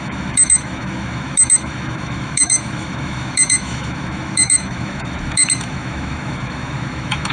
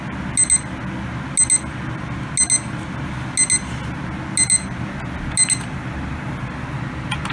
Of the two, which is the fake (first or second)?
first